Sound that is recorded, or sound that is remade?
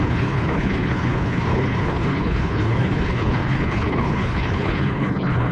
remade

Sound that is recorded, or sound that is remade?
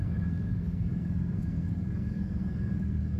remade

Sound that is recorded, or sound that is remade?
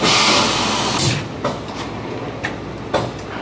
recorded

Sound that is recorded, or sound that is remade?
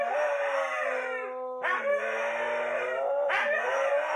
recorded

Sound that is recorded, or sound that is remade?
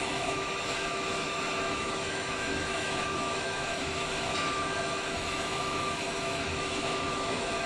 remade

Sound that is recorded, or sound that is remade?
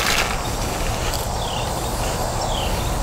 recorded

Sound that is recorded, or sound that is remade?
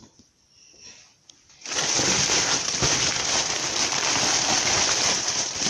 remade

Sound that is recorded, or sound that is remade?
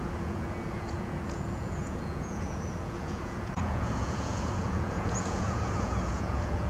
remade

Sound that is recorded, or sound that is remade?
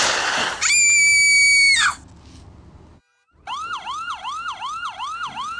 recorded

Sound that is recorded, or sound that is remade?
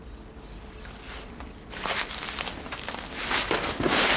recorded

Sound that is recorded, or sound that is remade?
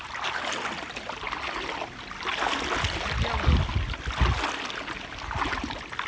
recorded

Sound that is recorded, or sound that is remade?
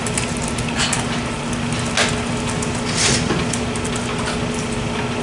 recorded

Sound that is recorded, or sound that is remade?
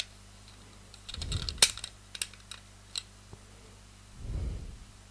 recorded